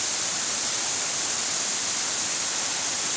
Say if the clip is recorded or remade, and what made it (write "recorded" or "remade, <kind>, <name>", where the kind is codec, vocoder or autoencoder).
recorded